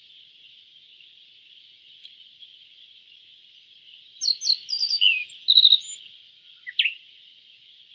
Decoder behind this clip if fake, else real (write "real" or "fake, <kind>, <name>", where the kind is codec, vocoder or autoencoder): real